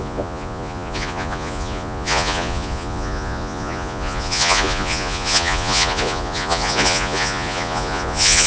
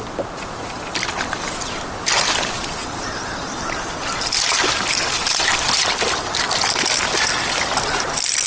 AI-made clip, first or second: first